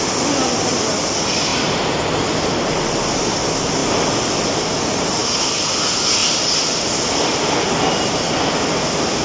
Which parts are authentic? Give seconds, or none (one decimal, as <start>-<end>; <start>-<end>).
0.0-3.8; 4.8-9.2